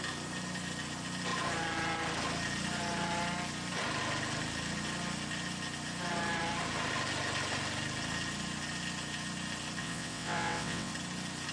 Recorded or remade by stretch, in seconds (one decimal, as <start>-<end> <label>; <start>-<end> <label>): 0.0-9.8 recorded; 9.8-10.9 remade; 10.9-11.5 recorded